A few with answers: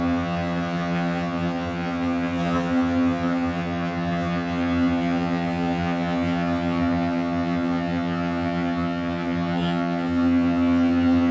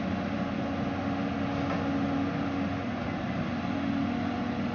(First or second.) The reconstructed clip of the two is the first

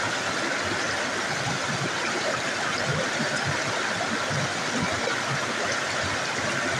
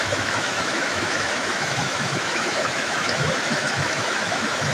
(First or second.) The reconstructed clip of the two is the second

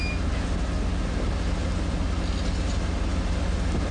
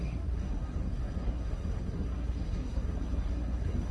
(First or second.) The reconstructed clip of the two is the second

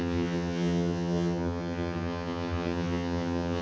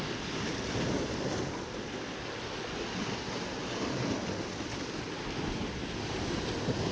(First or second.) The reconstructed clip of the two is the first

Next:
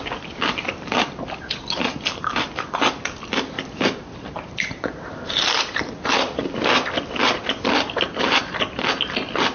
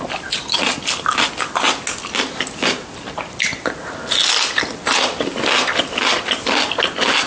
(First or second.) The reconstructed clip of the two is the first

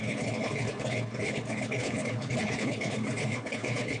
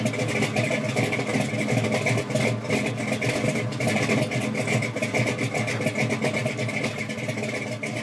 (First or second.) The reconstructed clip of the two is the first